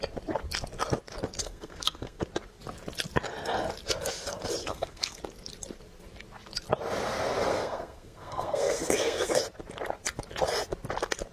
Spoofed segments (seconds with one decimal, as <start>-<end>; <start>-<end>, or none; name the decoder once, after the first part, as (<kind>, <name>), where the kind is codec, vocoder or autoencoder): 1.4-2.2 (codec, SNAC); 4.6-5.2; 7.5-9.4